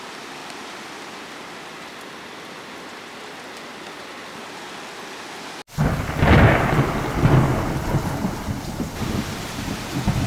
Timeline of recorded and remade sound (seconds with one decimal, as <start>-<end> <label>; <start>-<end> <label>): 0.0-0.4 recorded; 0.4-4.5 remade; 4.5-7.5 recorded; 7.5-9.8 remade; 9.8-10.3 recorded